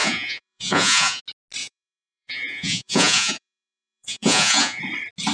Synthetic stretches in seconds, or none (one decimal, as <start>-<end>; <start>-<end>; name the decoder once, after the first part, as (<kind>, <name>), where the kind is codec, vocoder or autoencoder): 0.0-1.2 (vocoder, Vocos); 1.6-4.8